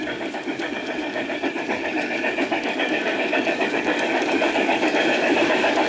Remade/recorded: remade